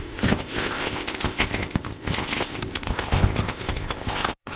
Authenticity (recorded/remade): remade